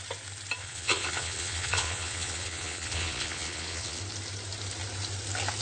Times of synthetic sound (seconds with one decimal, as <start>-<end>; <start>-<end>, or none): 0.6-4.0